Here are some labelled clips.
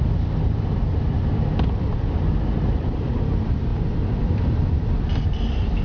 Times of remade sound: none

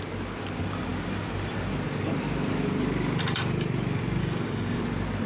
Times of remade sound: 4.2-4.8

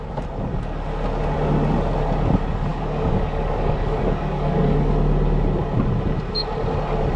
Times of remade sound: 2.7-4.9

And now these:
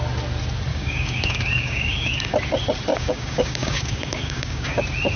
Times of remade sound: 0.7-2.3; 2.9-4.8